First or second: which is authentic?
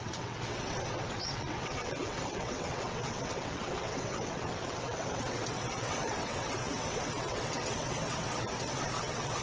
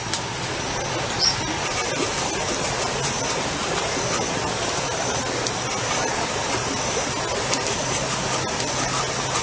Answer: second